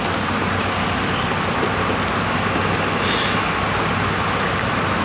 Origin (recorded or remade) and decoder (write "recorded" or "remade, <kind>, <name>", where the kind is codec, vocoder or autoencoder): recorded